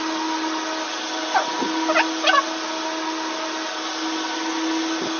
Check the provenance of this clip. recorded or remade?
recorded